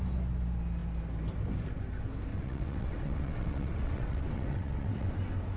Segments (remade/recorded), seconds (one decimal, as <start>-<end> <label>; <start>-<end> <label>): 0.0-2.3 recorded; 2.3-5.1 remade; 5.1-5.6 recorded